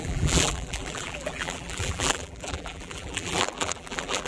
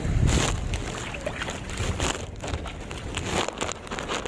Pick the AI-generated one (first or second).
first